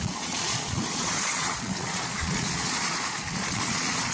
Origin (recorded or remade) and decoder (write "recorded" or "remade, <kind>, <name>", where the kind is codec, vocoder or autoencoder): remade, vocoder, Vocos